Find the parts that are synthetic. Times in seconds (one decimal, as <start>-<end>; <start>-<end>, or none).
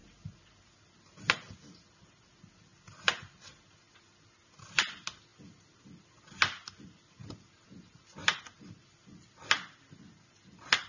7.2-8.4